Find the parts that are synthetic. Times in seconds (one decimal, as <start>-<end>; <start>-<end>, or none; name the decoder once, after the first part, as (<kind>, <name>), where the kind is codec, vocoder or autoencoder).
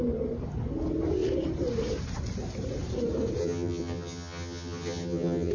3.4-5.5 (vocoder, HiFi-GAN)